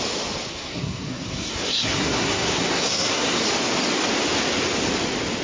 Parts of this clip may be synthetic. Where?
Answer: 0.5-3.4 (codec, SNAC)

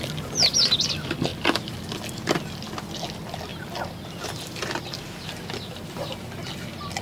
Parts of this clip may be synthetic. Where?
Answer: none

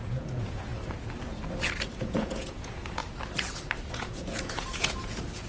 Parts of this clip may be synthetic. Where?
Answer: 0.0-0.7 (vocoder, Vocos); 2.0-3.0; 3.9-5.5